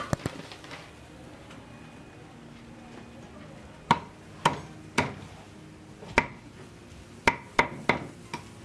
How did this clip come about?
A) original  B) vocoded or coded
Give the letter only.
A